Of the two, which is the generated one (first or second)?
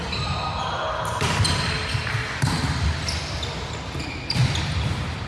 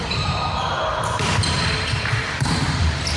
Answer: second